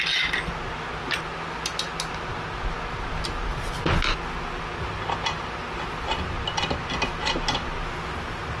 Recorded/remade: recorded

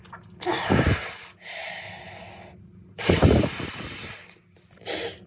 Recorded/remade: recorded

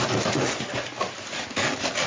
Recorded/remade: recorded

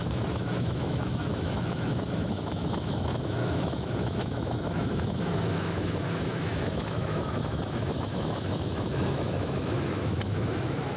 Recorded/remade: remade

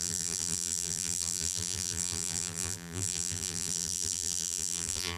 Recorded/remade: remade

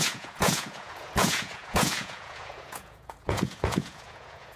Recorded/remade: remade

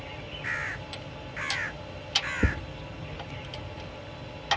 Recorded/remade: recorded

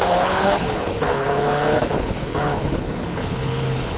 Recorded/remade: remade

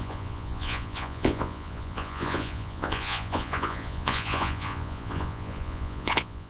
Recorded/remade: remade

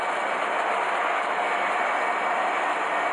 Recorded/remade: recorded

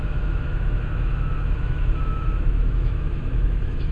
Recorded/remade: remade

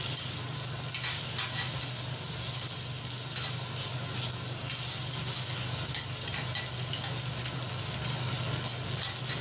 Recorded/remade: recorded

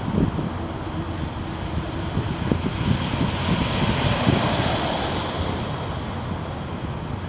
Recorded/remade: recorded